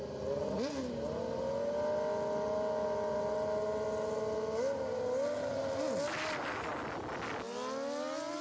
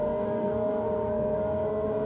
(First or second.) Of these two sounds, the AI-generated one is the second